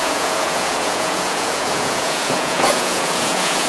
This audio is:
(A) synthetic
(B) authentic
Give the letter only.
A